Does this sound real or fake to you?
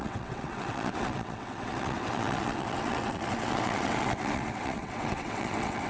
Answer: fake